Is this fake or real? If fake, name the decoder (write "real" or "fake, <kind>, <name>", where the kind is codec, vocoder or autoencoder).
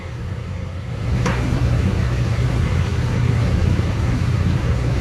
fake, codec, SNAC